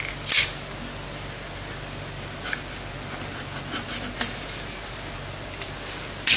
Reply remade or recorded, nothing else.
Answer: recorded